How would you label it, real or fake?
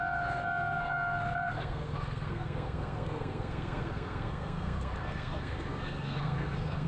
fake